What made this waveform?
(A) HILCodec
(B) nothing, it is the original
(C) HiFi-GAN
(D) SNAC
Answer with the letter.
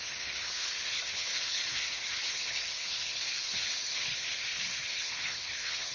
A